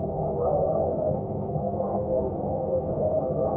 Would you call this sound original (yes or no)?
no